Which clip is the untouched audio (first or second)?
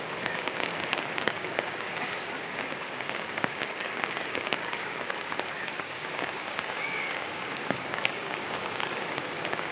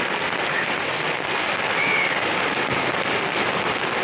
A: second